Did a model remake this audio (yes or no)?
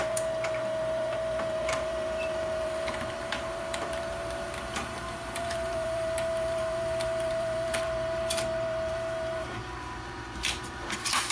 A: yes